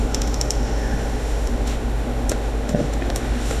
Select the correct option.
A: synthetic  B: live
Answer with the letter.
A